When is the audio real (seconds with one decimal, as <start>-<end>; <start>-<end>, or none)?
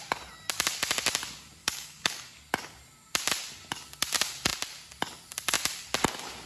0.0-1.6; 2.2-6.5